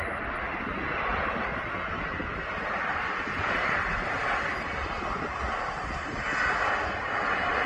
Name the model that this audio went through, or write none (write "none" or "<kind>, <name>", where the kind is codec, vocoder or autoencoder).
none